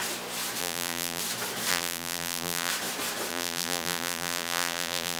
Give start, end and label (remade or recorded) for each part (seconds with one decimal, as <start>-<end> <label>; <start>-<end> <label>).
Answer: 0.0-0.6 recorded; 0.6-1.2 remade; 1.2-1.7 recorded; 1.7-2.7 remade; 2.7-3.3 recorded; 3.3-5.2 remade